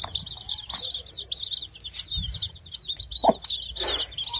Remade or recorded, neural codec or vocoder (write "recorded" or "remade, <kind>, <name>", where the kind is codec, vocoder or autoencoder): recorded